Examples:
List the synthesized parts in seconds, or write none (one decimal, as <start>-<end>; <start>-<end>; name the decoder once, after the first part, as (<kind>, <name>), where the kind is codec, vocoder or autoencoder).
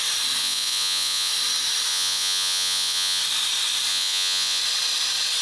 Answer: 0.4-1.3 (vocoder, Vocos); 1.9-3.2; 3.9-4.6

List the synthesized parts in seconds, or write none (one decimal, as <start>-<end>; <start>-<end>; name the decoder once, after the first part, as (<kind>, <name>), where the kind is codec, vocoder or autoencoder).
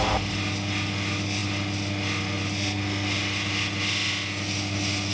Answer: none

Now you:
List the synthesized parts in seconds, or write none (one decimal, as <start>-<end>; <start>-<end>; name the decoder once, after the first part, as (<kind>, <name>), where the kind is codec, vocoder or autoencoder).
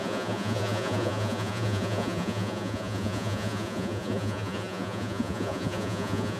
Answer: 0.0-6.4 (vocoder, Vocos)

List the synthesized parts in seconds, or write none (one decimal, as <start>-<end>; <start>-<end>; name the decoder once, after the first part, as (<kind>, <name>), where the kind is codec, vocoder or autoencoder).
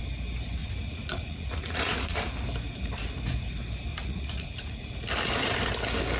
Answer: 0.6-2.2 (vocoder, Vocos); 3.9-5.0